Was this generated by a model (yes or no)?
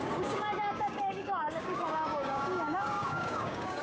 yes